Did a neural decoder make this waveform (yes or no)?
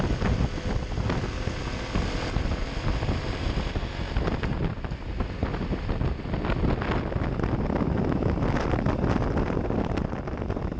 no